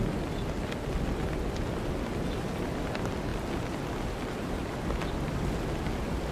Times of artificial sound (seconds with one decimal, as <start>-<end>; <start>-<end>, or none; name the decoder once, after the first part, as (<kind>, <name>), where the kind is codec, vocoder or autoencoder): none